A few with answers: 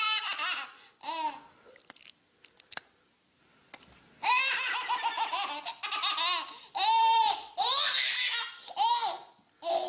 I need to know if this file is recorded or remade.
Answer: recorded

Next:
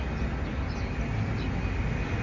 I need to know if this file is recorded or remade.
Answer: recorded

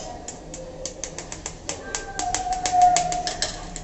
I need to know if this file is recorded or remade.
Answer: recorded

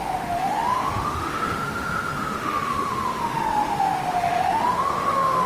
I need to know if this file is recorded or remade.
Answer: remade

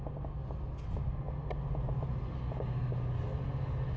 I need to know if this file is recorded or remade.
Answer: recorded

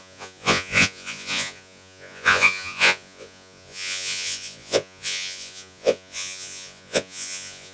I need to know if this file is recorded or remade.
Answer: remade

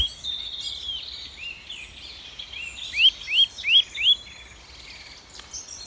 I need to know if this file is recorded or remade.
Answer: recorded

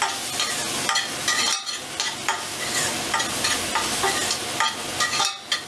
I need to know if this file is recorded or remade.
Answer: recorded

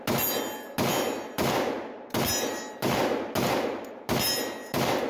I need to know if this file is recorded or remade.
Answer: recorded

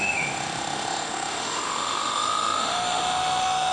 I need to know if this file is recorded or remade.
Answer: remade